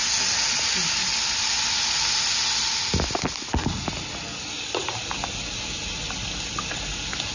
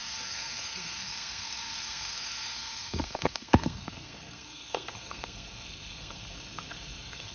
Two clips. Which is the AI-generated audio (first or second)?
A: second